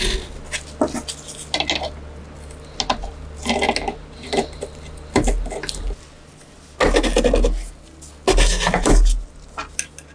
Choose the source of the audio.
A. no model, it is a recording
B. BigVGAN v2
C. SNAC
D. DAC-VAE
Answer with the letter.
A